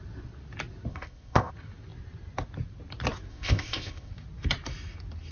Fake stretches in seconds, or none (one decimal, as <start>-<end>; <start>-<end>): 0.9-1.5; 3.3-4.1